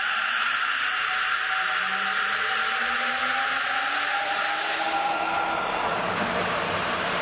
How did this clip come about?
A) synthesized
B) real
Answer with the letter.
B